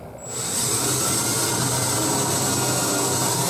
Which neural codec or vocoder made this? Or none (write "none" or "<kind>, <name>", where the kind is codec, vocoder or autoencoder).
none